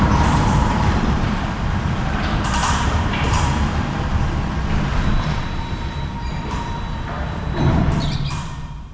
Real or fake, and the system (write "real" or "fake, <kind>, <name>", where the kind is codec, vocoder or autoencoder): fake, vocoder, BigVGAN v2